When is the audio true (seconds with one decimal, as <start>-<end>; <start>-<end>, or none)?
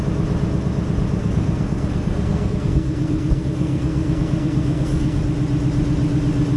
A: 0.0-1.2; 5.2-6.6